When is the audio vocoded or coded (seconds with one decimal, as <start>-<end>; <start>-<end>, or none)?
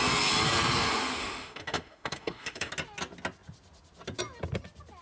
1.2-2.7